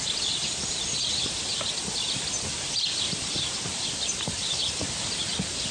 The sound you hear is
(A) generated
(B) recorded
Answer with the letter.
B